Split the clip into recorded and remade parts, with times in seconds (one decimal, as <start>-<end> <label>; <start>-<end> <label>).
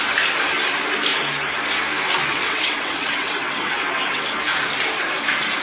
0.0-2.2 recorded; 2.2-4.2 remade; 4.2-5.6 recorded